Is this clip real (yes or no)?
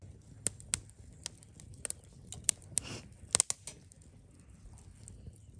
yes